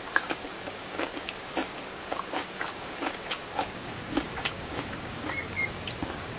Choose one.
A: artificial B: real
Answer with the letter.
A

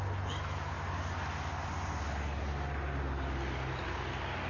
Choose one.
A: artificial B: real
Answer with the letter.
B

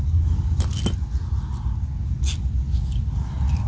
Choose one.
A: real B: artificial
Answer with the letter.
A